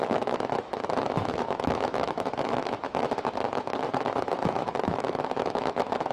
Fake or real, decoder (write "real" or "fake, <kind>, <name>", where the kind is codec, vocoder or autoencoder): fake, autoencoder, DAC-VAE